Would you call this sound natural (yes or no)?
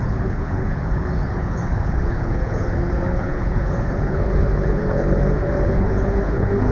no